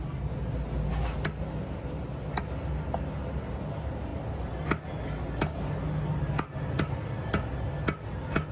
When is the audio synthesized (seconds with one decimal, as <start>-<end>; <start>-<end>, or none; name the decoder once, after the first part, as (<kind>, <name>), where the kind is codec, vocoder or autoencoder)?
none